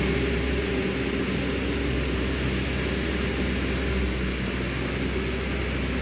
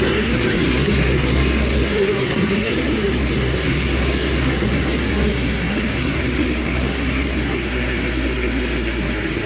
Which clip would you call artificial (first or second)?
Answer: second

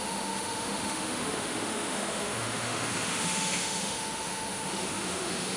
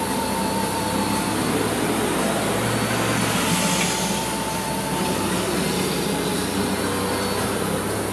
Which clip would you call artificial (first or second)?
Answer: first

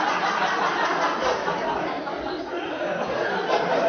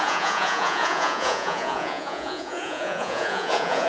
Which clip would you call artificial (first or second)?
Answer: second